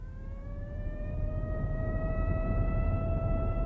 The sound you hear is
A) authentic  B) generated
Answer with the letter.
B